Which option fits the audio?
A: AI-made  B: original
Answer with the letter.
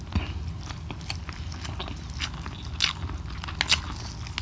B